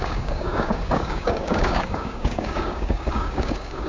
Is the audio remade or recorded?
remade